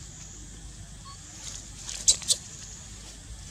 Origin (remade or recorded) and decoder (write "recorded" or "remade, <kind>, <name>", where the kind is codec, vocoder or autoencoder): recorded